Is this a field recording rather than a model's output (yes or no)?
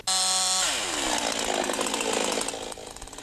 yes